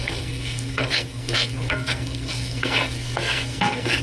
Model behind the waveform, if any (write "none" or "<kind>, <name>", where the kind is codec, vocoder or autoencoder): codec, SNAC